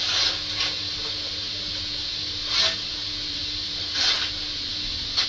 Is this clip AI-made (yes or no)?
no